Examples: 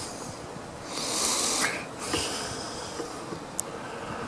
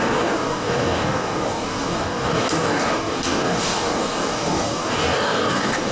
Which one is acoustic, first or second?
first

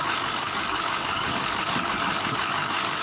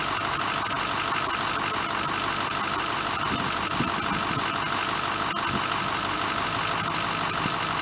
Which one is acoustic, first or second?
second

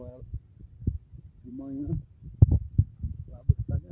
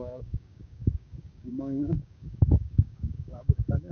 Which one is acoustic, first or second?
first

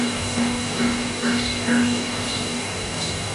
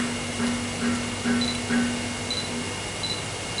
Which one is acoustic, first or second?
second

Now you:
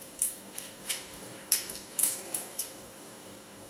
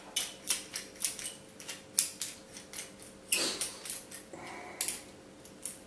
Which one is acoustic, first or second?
second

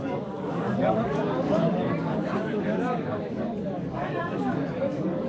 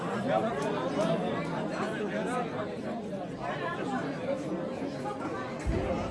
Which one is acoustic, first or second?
second